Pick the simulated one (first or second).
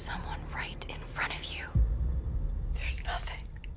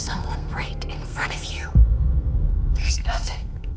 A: second